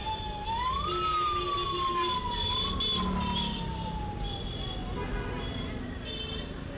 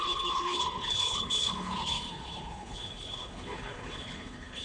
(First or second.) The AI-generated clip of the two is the second